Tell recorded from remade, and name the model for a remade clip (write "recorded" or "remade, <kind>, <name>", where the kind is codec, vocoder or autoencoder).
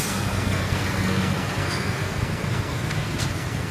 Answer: remade, codec, SNAC